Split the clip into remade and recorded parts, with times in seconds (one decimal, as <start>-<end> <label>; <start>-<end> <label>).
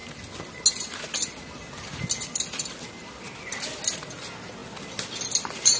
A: 0.0-5.8 recorded